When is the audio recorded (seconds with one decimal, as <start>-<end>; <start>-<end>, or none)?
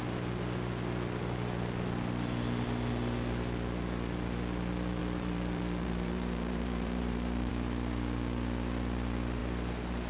0.0-5.0; 7.5-10.1